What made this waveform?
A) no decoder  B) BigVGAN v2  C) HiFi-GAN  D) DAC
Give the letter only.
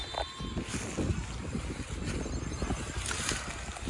A